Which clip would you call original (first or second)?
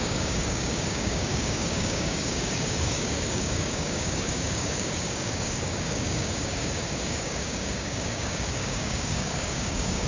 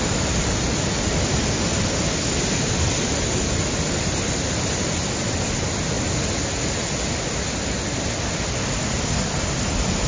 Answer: second